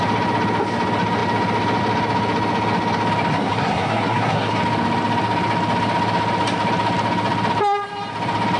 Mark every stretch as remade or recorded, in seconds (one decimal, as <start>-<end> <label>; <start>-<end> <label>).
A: 0.0-3.3 recorded; 3.3-4.6 remade; 4.6-8.6 recorded